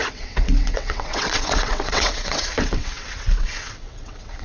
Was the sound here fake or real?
fake